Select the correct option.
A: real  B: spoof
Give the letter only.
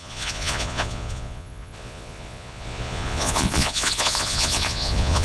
B